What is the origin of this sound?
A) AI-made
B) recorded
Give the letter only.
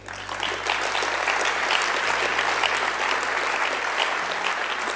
B